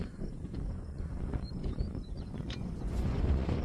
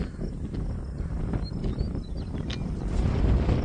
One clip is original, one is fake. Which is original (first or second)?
second